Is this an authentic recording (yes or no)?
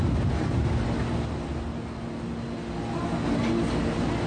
yes